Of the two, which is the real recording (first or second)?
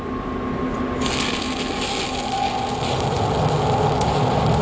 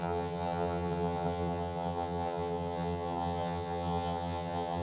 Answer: first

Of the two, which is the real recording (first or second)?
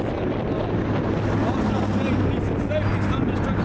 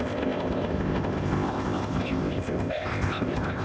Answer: first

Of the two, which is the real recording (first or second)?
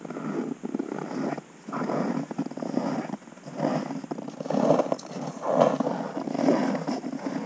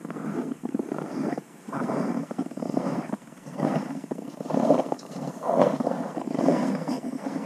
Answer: first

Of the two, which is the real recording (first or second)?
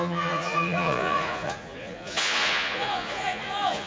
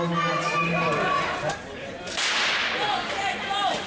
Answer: second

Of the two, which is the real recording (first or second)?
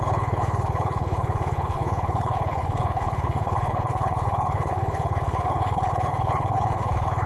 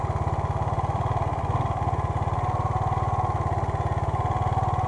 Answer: second